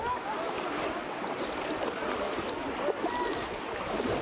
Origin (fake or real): real